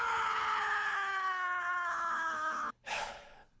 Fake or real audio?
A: fake